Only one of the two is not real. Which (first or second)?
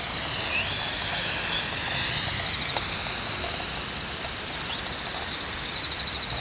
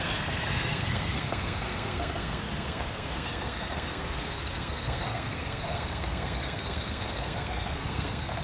second